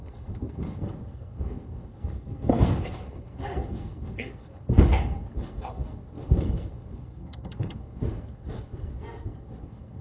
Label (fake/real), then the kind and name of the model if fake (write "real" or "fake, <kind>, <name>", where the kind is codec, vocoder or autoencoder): fake, codec, SNAC